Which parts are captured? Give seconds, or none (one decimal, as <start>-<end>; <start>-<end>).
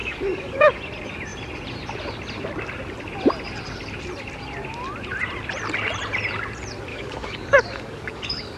0.7-6.9